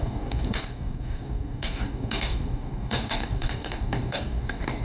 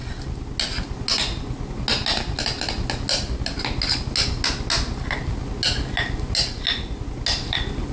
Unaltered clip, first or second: second